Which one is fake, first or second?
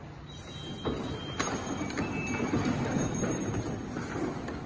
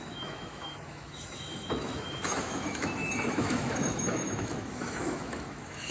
second